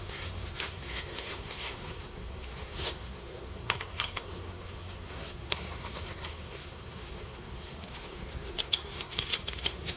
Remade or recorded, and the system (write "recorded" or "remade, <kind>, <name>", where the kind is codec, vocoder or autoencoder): remade, codec, SNAC